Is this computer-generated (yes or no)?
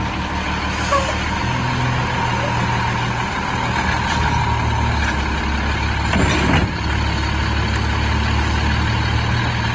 no